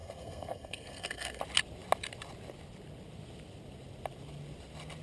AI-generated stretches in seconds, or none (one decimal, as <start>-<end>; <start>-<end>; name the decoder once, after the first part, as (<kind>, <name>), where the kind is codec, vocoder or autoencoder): 0.0-1.4 (codec, SNAC)